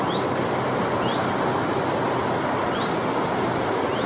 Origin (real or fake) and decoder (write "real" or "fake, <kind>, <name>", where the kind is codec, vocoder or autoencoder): real